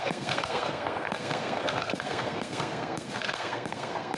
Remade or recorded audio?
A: remade